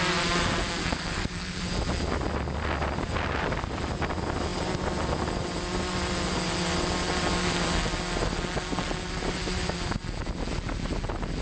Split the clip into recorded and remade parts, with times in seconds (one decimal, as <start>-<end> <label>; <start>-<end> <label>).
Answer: 0.0-0.8 recorded; 0.8-1.6 remade; 1.6-11.4 recorded

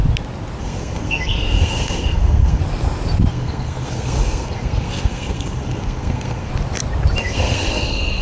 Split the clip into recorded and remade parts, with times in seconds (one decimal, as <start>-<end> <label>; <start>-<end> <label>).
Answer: 0.0-0.6 recorded; 0.6-2.6 remade; 2.6-3.3 recorded; 3.3-6.5 remade; 6.5-7.2 recorded; 7.2-8.2 remade

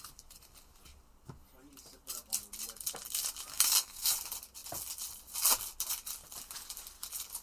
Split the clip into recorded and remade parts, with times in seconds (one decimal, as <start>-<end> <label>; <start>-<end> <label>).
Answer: 0.0-3.5 recorded; 3.5-4.1 remade; 4.1-7.4 recorded

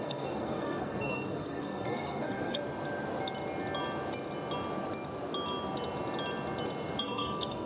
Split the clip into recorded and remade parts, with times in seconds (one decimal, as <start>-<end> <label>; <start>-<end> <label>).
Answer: 0.0-2.6 remade; 2.6-7.0 recorded; 7.0-7.7 remade

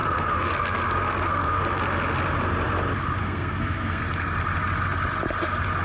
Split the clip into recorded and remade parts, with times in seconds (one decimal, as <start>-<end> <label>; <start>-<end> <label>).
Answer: 0.0-1.6 remade; 1.6-3.2 recorded; 3.2-4.0 remade; 4.0-5.8 recorded

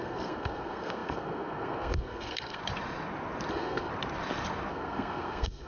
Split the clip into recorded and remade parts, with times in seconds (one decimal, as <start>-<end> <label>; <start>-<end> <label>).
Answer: 0.0-2.6 remade; 2.6-3.5 recorded; 3.5-3.9 remade; 3.9-4.7 recorded; 4.7-5.7 remade

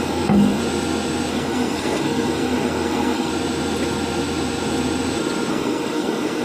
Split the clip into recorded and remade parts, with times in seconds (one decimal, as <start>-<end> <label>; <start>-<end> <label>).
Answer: 0.0-0.6 remade; 0.6-1.3 recorded; 1.3-3.3 remade; 3.3-5.5 recorded; 5.5-6.4 remade